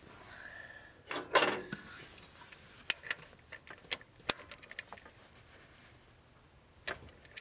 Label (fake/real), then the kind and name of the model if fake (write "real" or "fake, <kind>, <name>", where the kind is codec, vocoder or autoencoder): real